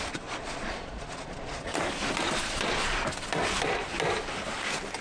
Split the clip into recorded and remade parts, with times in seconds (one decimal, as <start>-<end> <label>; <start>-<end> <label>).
0.0-1.7 remade; 1.7-5.0 recorded